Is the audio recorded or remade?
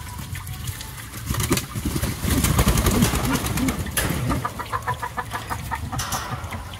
recorded